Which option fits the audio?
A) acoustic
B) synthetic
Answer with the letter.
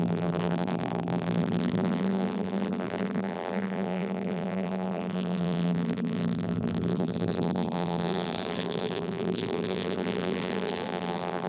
B